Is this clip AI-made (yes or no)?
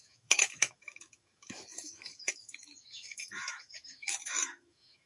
yes